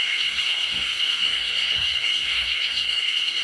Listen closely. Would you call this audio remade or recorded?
remade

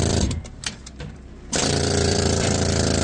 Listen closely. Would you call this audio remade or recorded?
remade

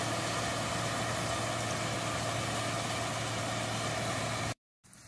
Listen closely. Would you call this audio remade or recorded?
recorded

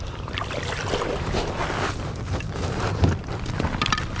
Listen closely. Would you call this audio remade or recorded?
recorded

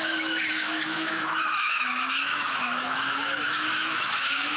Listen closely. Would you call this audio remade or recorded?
remade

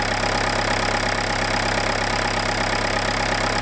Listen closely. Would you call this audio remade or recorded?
recorded